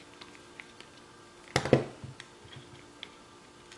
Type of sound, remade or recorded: recorded